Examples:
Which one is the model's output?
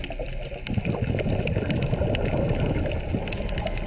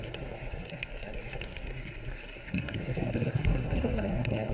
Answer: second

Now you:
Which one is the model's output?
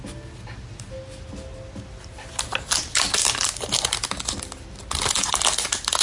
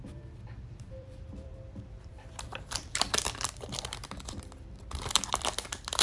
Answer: second